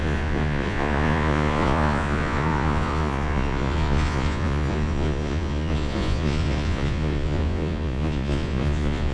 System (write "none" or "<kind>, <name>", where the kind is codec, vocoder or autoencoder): vocoder, Vocos